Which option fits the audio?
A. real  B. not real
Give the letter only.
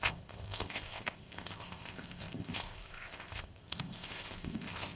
B